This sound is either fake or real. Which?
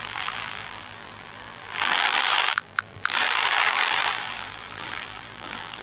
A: fake